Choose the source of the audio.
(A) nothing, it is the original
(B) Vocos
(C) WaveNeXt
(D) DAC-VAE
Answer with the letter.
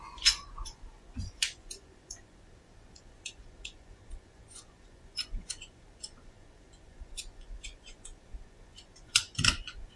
B